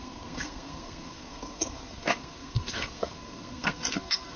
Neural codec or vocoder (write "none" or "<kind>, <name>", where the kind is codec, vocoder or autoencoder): codec, SNAC